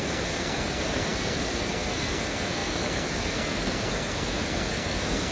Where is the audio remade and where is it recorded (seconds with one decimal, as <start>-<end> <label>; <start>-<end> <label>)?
0.0-5.3 remade